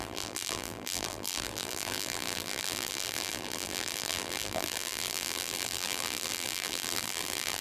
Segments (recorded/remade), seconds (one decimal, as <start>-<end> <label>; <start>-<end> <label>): 0.0-7.6 remade